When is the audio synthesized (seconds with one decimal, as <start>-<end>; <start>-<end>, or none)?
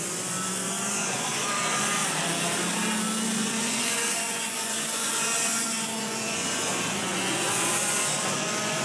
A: 0.0-2.0; 3.4-8.8